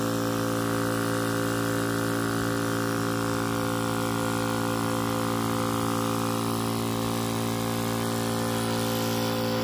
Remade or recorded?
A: recorded